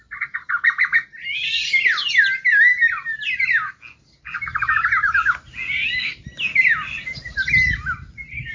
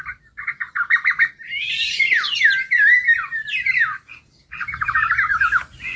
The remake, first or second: second